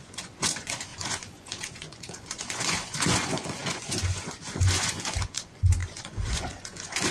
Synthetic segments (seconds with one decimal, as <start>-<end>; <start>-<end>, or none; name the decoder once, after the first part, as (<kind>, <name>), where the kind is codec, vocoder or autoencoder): 0.0-7.1 (vocoder, Vocos)